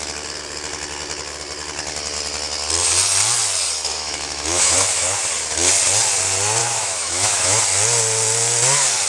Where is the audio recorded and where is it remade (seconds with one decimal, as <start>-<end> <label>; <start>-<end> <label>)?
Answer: 0.0-3.9 recorded; 3.9-5.2 remade; 5.2-6.6 recorded; 6.6-7.6 remade; 7.6-9.1 recorded